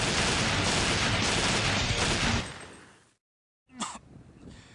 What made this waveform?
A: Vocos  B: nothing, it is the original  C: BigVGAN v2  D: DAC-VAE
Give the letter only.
B